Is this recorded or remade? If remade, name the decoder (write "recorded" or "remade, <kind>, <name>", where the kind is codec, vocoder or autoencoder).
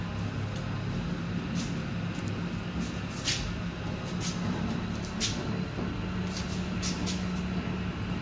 recorded